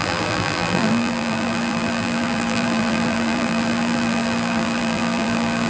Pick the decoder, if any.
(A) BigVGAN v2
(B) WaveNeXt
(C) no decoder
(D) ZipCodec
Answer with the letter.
A